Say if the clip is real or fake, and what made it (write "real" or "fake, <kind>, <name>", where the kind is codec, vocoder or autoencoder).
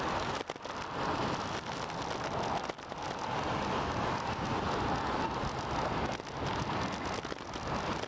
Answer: real